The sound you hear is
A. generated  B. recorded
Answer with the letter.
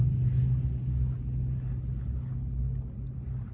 B